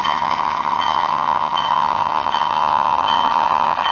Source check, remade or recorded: remade